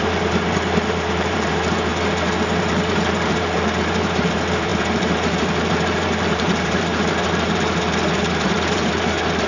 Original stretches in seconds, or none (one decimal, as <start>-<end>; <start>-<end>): 1.9-2.6